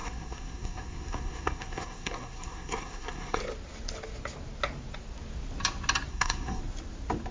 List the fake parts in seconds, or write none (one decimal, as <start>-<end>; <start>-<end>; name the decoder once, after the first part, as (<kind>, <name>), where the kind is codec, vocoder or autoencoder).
0.0-3.4 (codec, SNAC); 6.1-6.6